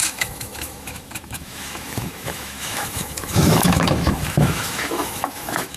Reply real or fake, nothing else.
fake